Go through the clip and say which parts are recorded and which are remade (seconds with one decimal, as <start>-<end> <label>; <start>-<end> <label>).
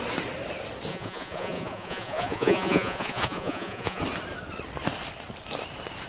0.0-0.9 recorded; 0.9-4.0 remade; 4.0-6.1 recorded